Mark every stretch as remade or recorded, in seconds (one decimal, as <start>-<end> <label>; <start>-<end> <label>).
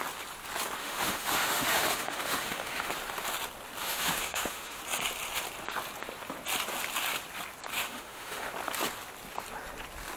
0.0-0.8 recorded; 0.8-2.9 remade; 2.9-3.8 recorded; 3.8-4.8 remade; 4.8-7.7 recorded; 7.7-8.5 remade; 8.5-10.2 recorded